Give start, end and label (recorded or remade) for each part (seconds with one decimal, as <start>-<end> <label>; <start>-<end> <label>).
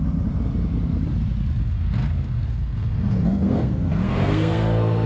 0.0-1.6 recorded; 1.6-5.1 remade